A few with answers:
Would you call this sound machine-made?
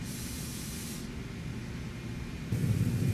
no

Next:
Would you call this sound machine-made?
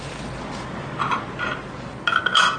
no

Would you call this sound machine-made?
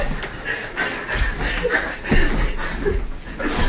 no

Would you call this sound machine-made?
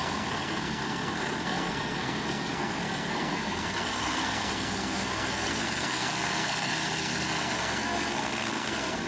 yes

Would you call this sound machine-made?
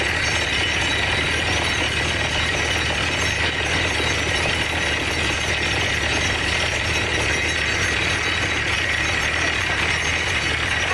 no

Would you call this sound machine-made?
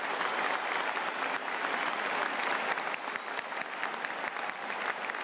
no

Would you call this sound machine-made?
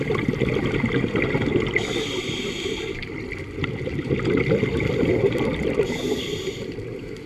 no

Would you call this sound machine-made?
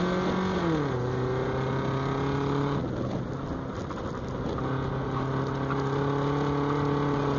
no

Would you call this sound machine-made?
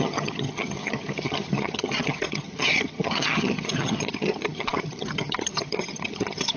yes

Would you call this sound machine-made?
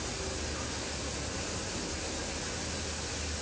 no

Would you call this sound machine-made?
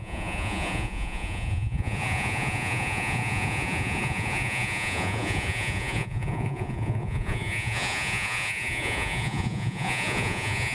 yes